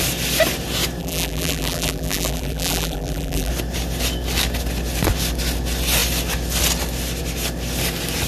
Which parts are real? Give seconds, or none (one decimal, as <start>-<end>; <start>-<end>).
0.0-1.0; 3.5-8.3